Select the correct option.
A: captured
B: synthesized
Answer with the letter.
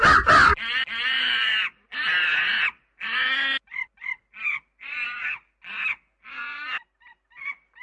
A